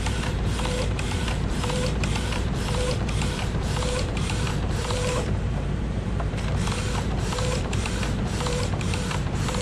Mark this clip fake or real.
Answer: fake